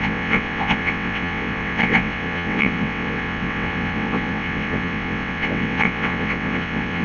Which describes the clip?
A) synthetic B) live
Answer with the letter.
A